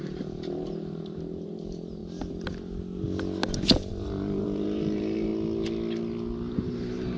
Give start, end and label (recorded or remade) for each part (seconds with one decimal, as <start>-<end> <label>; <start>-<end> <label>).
0.0-2.0 remade; 2.0-3.9 recorded; 3.9-5.3 remade; 5.3-6.5 recorded; 6.5-7.2 remade